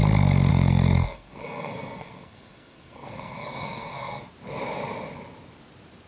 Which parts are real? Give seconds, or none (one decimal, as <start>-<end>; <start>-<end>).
0.0-0.5; 4.2-6.1